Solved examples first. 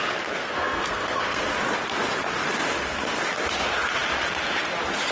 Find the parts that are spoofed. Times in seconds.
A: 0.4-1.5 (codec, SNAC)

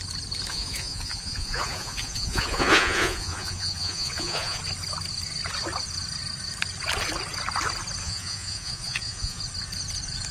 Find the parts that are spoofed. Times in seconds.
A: 0.5-4.6 (vocoder, Vocos); 8.0-9.4

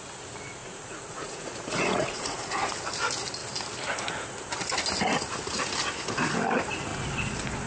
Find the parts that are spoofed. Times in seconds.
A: 0.6-2.7 (vocoder, Vocos)

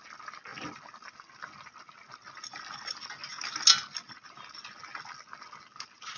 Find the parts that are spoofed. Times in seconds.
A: 0.5-1.1 (vocoder, BigVGAN v2)

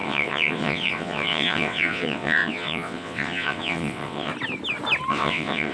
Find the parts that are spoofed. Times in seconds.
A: 0.0-4.3 (vocoder, WaveNeXt); 5.1-5.7

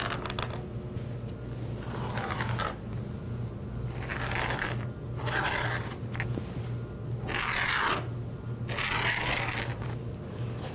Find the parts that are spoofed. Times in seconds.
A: none